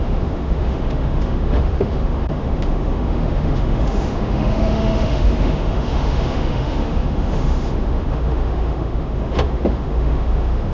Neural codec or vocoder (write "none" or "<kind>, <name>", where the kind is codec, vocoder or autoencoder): autoencoder, DAC-VAE